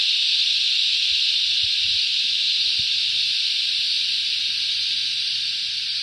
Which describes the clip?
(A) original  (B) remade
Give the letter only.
A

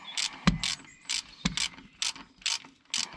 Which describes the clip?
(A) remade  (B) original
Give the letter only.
B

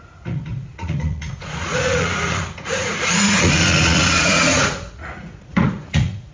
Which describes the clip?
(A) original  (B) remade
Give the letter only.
B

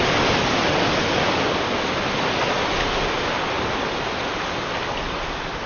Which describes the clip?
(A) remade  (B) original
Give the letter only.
B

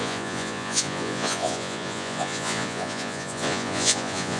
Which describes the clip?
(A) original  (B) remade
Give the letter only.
B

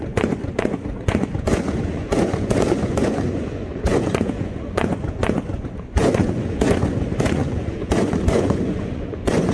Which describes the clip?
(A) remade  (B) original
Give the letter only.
A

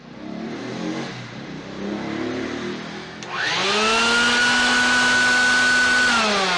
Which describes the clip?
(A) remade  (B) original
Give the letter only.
B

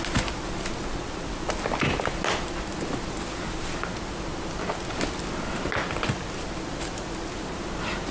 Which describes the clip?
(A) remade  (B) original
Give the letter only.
B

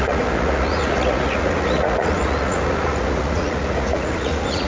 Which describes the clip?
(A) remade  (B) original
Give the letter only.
A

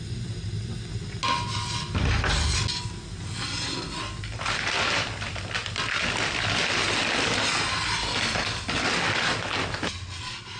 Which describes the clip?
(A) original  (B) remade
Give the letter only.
A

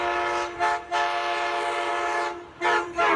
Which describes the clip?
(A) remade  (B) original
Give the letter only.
B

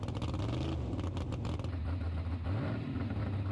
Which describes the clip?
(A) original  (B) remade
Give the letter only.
A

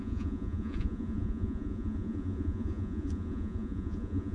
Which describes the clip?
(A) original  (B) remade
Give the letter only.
B